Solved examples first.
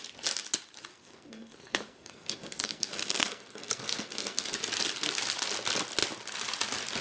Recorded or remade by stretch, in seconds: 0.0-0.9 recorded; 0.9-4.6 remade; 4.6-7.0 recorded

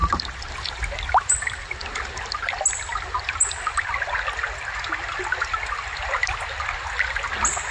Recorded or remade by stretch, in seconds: 0.0-7.7 recorded

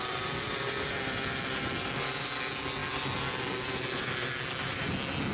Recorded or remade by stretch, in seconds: 0.0-5.3 recorded